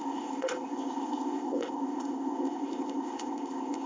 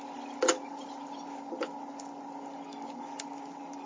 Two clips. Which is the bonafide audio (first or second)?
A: second